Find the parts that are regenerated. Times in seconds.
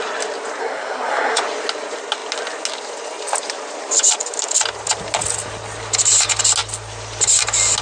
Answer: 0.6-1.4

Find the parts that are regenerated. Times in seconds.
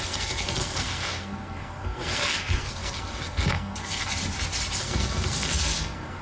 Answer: 0.0-4.2; 4.8-6.2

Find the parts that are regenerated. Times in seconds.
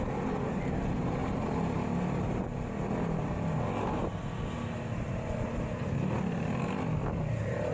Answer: none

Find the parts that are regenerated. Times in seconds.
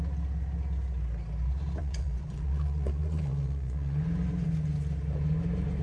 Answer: 1.8-4.0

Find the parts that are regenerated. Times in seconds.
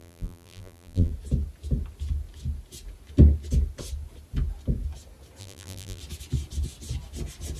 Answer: 0.0-1.1; 5.4-6.0